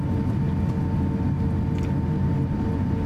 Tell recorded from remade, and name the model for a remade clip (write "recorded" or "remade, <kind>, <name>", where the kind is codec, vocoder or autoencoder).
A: recorded